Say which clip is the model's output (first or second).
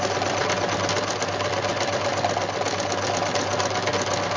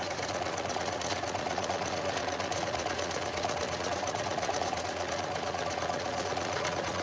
second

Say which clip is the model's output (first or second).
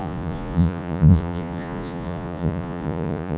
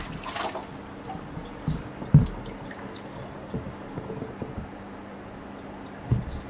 first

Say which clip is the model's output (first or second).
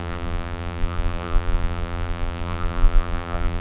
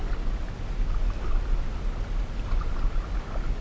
first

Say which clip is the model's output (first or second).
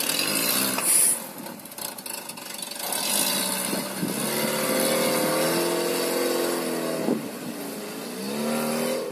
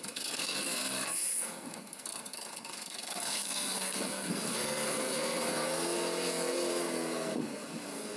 second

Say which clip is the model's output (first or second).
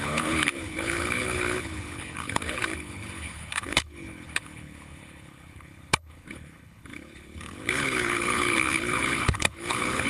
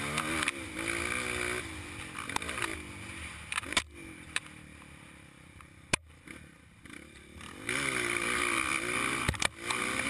first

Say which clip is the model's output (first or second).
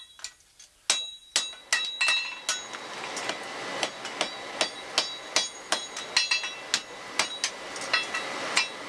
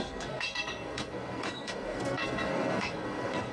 second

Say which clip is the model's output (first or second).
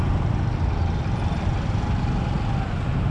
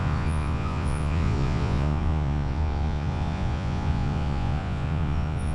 second